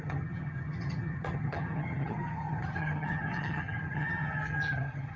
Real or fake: fake